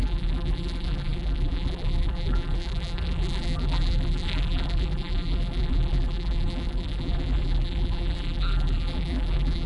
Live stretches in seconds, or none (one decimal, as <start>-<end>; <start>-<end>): none